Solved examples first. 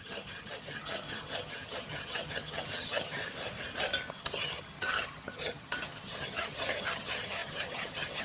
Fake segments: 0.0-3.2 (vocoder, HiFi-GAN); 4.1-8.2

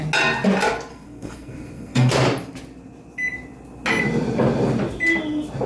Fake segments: 0.9-2.1 (codec, SNAC)

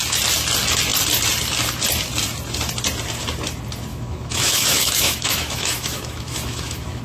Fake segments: 3.9-7.0 (autoencoder, DAC-VAE)

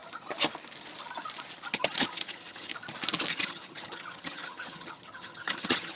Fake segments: 1.7-2.7 (vocoder, HiFi-GAN); 3.3-6.0

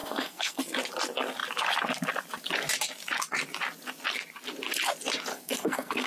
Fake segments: 0.0-0.6 (codec, SNAC); 5.3-6.1

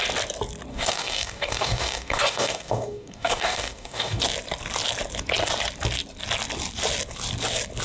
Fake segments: 0.7-4.2 (codec, DAC)

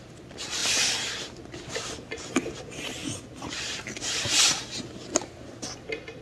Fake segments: none